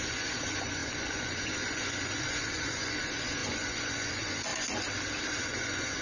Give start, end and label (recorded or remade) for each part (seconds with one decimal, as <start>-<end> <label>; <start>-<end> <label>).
0.0-4.5 remade; 4.5-5.4 recorded; 5.4-6.0 remade